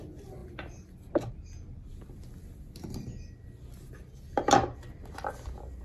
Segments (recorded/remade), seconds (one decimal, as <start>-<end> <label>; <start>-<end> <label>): 0.0-5.8 recorded

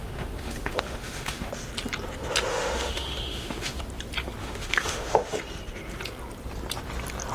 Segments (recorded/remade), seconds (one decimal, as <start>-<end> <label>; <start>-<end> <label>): 0.0-1.5 remade; 1.5-2.5 recorded; 2.5-3.8 remade; 3.8-4.4 recorded; 4.4-5.4 remade; 5.4-7.3 recorded

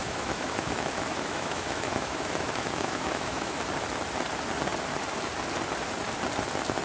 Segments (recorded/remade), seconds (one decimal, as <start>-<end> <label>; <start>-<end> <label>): 0.0-3.6 remade; 3.6-6.8 recorded

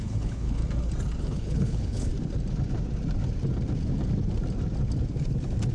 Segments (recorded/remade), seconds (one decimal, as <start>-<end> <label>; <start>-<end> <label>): 0.0-0.6 remade; 0.6-1.2 recorded; 1.2-2.1 remade; 2.1-5.7 recorded

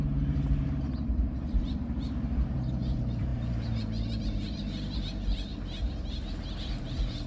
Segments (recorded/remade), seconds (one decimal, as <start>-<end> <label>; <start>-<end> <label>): 0.0-5.5 remade; 5.5-6.4 recorded; 6.4-7.3 remade

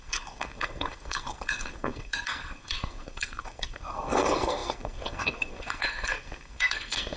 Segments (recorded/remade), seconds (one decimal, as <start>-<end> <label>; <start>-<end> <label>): 0.0-7.2 remade

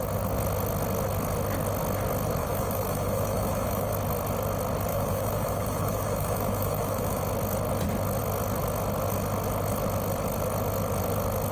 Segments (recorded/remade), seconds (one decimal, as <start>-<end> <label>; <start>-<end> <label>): 0.0-2.4 recorded; 2.4-3.9 remade; 3.9-4.9 recorded; 4.9-7.2 remade; 7.2-11.5 recorded